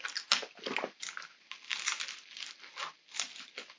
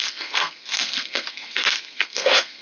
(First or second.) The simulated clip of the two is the second